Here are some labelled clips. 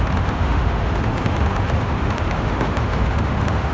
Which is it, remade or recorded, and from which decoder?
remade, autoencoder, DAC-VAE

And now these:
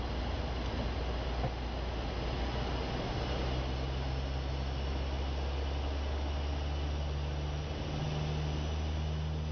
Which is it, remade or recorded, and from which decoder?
recorded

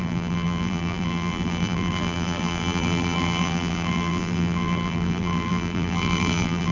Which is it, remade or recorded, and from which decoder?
remade, vocoder, BigVGAN v2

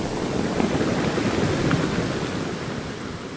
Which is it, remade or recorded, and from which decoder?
recorded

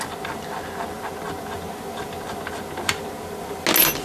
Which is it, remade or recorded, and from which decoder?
recorded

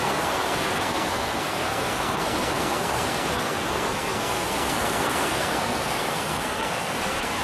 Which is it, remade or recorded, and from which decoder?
remade, codec, SNAC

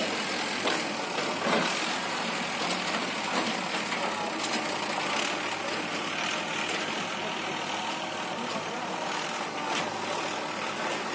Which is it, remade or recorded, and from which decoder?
recorded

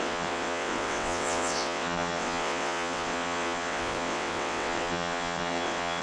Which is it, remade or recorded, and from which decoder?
remade, vocoder, WaveNeXt